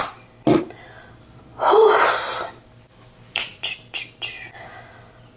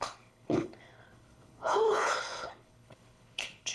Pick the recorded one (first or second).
first